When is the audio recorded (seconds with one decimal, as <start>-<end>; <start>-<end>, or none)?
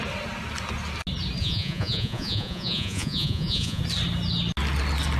0.0-1.4; 3.8-5.2